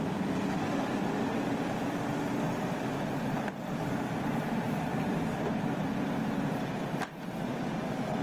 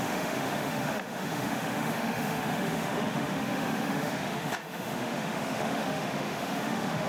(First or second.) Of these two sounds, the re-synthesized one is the second